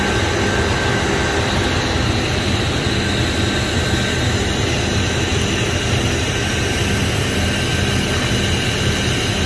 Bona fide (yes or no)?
yes